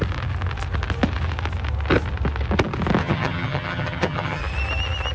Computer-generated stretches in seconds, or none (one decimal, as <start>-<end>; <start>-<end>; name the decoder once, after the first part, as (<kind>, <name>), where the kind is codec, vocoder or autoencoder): 3.0-4.4 (vocoder, HiFi-GAN)